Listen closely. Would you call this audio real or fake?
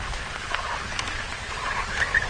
real